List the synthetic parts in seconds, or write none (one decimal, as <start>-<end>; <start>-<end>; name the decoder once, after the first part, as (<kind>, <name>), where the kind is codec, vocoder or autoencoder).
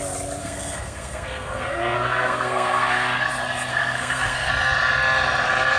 0.4-3.3 (codec, SNAC); 3.7-4.5